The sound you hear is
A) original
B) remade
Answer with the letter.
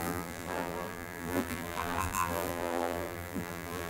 B